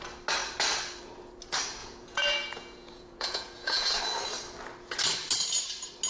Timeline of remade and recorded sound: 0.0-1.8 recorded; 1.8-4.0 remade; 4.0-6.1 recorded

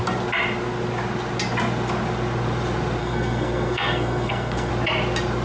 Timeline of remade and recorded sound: 0.0-3.0 recorded; 3.0-4.7 remade; 4.7-5.4 recorded

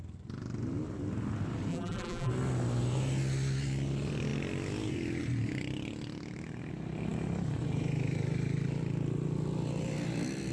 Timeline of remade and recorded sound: 0.0-1.7 recorded; 1.7-2.3 remade; 2.3-10.5 recorded

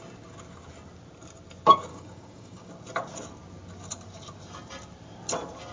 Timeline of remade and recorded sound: 0.0-1.9 recorded; 1.9-2.7 remade; 2.7-5.7 recorded

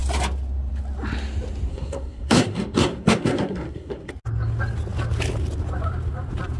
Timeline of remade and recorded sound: 0.0-1.7 recorded; 1.7-4.1 remade; 4.1-6.6 recorded

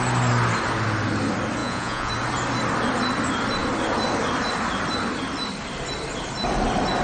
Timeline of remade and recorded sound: 0.0-1.6 recorded; 1.6-2.1 remade; 2.1-7.0 recorded